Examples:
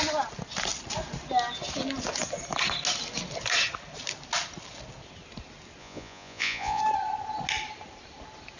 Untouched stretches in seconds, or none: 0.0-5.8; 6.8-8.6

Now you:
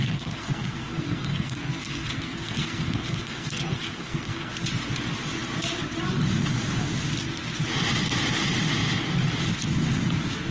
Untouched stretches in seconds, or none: 4.5-10.5

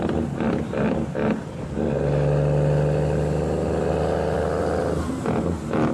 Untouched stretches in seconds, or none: 0.0-5.9

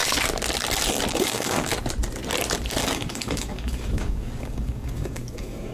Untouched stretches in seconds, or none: 0.0-1.1; 1.7-2.8

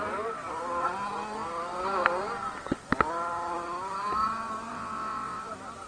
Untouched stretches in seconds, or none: 0.0-4.7; 5.4-5.9

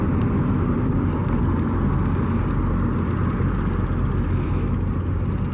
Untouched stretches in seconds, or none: 0.0-5.5

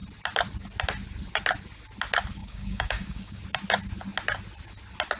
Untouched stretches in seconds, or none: 0.0-2.4; 3.4-5.2